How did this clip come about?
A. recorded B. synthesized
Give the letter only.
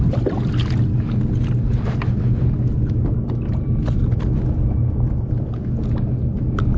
A